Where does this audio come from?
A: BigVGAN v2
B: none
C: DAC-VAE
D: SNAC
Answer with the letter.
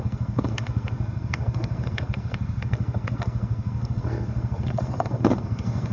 D